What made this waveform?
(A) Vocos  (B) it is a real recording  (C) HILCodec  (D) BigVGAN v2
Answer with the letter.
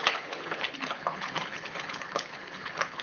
C